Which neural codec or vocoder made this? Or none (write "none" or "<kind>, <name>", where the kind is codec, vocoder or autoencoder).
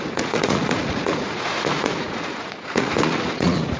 vocoder, Vocos